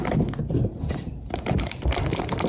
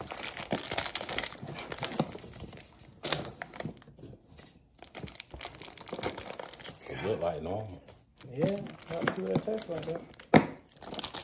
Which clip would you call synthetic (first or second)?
first